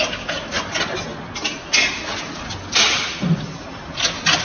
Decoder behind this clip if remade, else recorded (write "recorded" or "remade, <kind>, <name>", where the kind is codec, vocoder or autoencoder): recorded